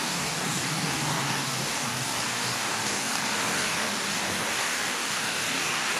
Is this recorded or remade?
remade